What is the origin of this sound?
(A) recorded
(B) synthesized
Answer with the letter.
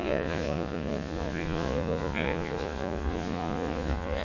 B